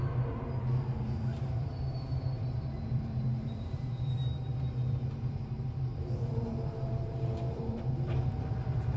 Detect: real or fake fake